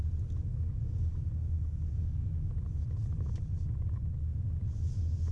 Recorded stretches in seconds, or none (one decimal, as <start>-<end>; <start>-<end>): 0.0-0.5; 2.5-5.3